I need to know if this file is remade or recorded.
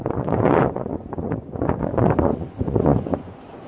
remade